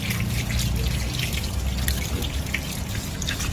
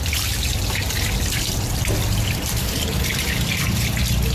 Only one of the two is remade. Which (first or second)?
second